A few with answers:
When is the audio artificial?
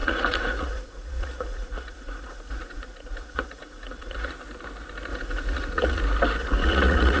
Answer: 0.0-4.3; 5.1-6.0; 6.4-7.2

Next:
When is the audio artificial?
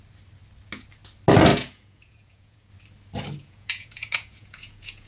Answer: 1.5-2.7; 3.4-5.1